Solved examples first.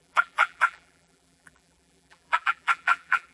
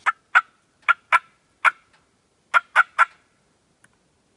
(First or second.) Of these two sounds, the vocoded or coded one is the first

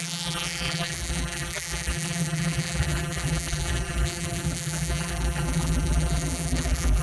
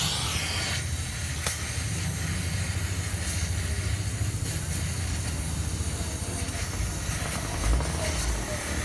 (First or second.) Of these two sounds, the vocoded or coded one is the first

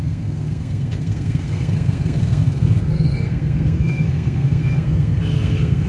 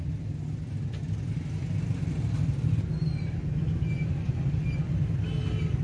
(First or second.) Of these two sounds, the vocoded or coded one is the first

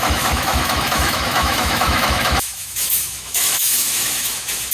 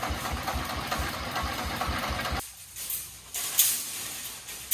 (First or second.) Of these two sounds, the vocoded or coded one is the first